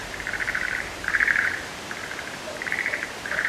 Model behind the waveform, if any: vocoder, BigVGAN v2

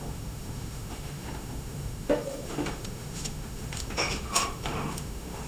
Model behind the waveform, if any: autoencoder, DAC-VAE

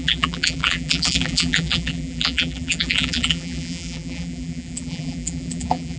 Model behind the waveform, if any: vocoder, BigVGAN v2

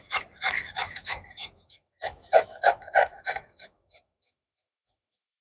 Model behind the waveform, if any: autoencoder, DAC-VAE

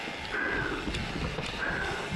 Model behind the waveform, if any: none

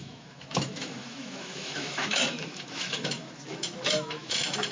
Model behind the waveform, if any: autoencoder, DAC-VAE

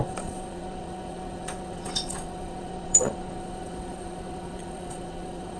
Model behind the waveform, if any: vocoder, Vocos